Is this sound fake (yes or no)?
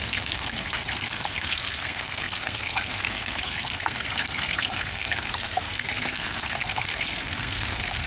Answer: yes